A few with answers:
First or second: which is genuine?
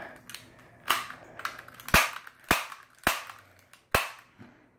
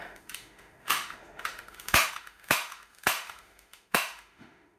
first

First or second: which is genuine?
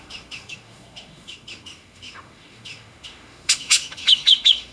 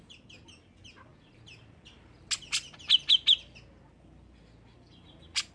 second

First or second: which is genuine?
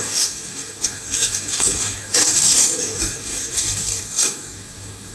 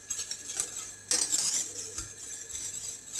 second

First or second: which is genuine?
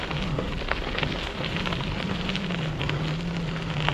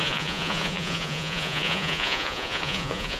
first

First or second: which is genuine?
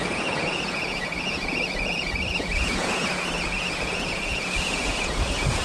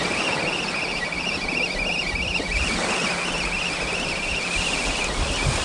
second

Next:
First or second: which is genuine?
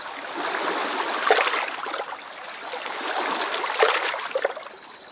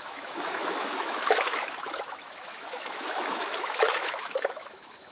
first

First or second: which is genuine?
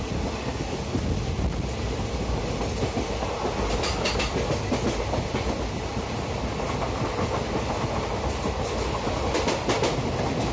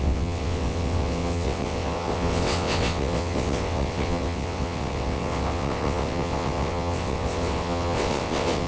first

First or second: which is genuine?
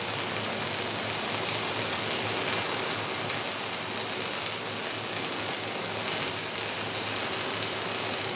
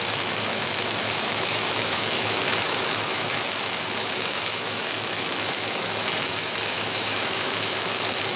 first